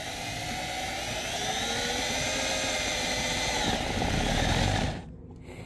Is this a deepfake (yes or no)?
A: no